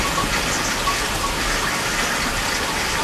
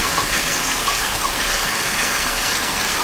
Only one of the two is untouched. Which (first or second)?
first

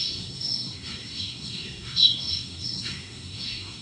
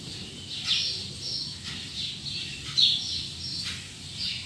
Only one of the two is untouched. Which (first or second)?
second